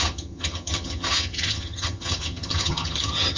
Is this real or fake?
fake